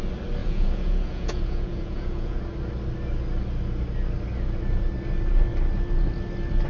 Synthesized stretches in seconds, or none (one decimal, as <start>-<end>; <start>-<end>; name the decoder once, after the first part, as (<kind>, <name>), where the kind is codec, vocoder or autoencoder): 0.4-2.4 (vocoder, Vocos)